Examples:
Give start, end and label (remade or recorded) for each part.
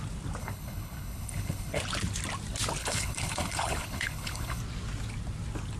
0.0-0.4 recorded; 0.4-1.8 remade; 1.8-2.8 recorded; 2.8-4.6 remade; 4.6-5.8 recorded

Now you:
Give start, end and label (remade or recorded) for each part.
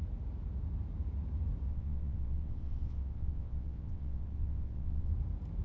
0.0-1.7 recorded; 1.7-5.1 remade; 5.1-5.6 recorded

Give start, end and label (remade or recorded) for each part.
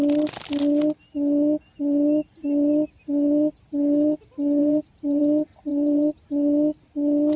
0.0-4.6 recorded; 4.6-5.2 remade; 5.2-5.7 recorded; 5.7-6.3 remade; 6.3-7.4 recorded